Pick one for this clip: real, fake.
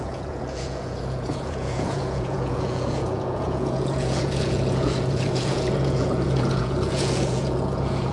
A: fake